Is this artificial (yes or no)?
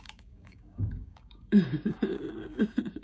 yes